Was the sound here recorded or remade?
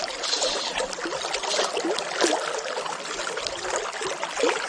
recorded